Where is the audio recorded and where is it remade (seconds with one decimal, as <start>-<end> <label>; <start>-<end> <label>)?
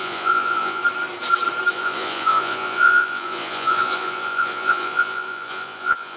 0.0-0.8 remade; 0.8-1.7 recorded; 1.7-6.2 remade